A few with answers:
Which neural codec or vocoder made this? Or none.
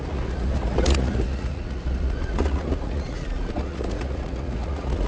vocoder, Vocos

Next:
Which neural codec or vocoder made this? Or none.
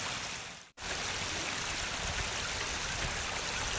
none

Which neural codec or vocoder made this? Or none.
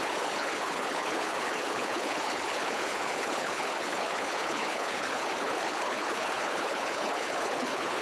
codec, HILCodec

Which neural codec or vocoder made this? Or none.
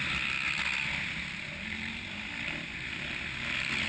none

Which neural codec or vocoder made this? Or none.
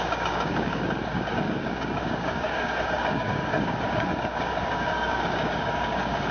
codec, DAC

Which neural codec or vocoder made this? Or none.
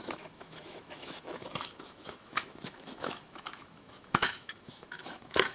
autoencoder, DAC-VAE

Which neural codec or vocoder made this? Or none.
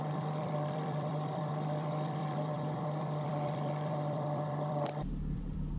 vocoder, BigVGAN v2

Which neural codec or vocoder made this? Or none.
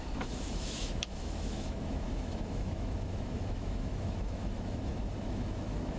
autoencoder, DAC-VAE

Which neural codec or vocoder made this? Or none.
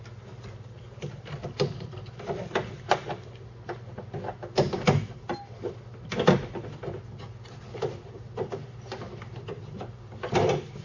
none